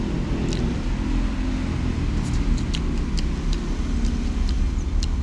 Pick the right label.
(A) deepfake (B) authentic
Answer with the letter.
B